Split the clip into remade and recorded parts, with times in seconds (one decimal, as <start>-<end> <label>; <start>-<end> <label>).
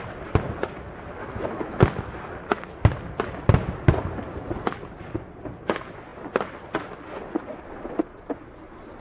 0.0-1.2 recorded; 1.2-1.8 remade; 1.8-9.0 recorded